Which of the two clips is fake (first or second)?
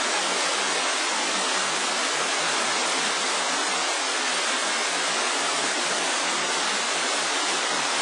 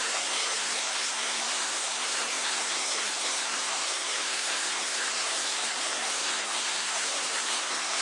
second